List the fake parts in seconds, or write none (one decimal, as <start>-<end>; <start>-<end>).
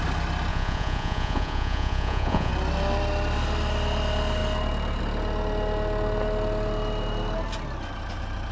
0.5-2.5